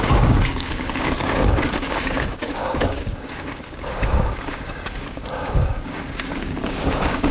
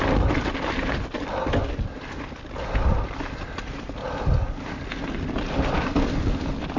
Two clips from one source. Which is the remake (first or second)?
first